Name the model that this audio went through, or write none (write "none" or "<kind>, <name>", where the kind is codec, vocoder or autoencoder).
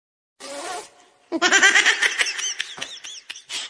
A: none